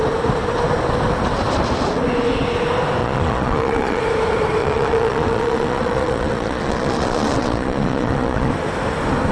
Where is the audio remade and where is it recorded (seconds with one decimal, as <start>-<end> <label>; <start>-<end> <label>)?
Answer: 0.0-3.0 recorded; 3.0-4.0 remade; 4.0-4.6 recorded; 4.6-8.5 remade; 8.5-9.3 recorded